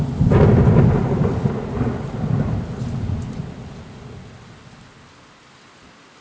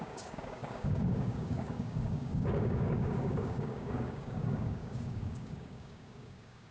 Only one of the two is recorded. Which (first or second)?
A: first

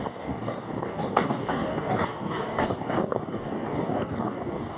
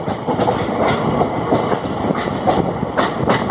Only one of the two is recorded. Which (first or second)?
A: second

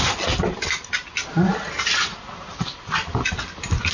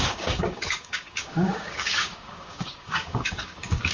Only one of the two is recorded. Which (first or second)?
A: first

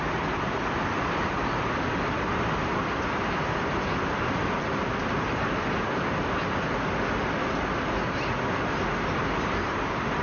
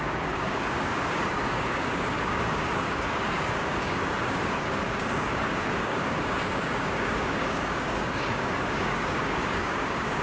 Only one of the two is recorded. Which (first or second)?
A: first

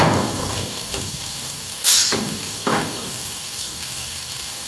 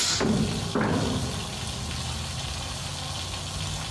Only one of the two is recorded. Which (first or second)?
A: second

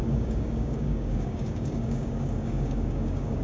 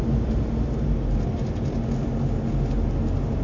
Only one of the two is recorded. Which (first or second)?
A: second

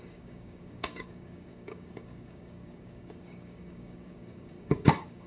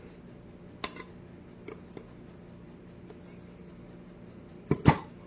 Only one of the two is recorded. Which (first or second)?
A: second